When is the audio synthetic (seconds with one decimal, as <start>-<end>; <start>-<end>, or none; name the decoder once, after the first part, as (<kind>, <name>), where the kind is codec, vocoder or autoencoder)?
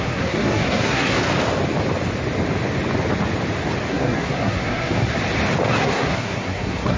0.0-1.2 (codec, SNAC); 3.9-5.2; 5.8-7.0